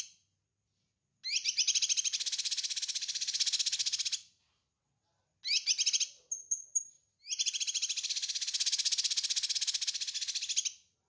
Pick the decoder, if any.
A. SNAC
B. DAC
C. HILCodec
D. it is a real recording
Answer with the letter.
D